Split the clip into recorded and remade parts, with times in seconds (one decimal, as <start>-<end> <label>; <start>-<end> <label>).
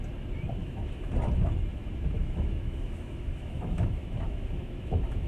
0.0-0.6 recorded; 0.6-1.1 remade; 1.1-1.7 recorded; 1.7-5.3 remade